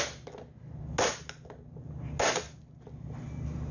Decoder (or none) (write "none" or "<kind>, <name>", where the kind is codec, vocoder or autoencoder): none